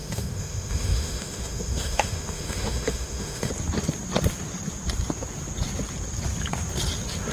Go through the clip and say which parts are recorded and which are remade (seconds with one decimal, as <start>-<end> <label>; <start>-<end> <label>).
0.0-3.5 remade; 3.5-7.3 recorded